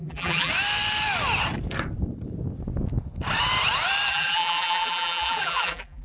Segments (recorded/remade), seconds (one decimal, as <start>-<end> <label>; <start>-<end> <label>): 0.0-0.5 remade; 0.5-4.1 recorded; 4.1-6.0 remade